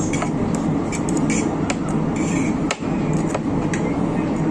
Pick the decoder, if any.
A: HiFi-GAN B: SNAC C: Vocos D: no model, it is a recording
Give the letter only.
D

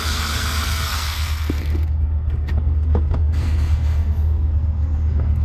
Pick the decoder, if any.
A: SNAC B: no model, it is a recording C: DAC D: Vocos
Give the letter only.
A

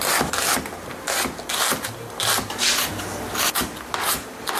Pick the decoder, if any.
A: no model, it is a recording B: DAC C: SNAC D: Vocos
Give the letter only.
A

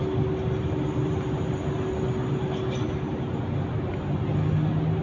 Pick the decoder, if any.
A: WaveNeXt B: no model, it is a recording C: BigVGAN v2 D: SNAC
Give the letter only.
B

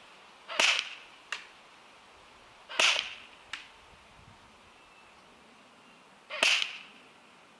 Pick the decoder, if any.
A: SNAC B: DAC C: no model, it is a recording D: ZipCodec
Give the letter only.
C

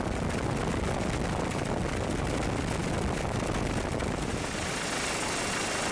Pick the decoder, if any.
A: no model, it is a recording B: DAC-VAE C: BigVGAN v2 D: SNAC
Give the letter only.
A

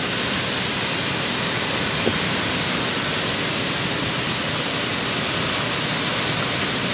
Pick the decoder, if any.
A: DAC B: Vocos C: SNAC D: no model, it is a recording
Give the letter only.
D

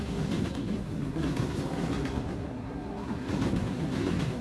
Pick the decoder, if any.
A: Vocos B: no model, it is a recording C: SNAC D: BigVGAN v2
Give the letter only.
C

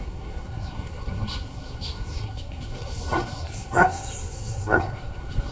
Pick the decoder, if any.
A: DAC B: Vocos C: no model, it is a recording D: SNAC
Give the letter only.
D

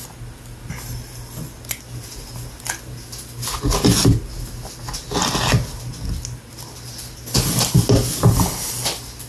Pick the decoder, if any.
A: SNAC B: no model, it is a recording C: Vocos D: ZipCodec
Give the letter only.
B